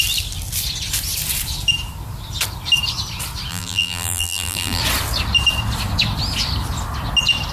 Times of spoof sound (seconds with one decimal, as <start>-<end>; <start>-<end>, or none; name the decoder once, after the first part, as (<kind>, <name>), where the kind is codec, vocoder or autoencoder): 3.5-4.8 (vocoder, BigVGAN v2)